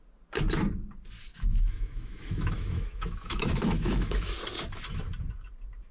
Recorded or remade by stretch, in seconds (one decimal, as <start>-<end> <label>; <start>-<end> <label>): 0.0-1.3 recorded; 1.3-4.3 remade; 4.3-5.9 recorded